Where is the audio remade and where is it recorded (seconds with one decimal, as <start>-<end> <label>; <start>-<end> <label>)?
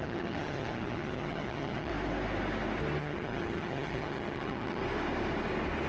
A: 0.0-1.9 remade; 1.9-3.0 recorded; 3.0-4.8 remade; 4.8-5.9 recorded